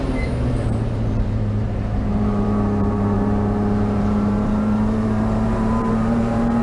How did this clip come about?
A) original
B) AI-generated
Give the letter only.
B